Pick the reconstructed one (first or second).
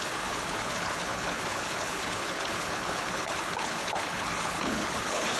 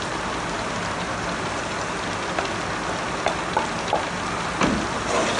first